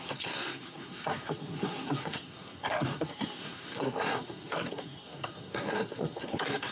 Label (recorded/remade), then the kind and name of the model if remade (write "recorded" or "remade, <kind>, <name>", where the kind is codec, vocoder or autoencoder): remade, codec, SNAC